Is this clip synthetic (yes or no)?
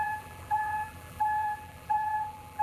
yes